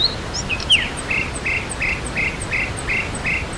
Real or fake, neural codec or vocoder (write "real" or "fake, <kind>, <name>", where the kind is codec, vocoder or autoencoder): real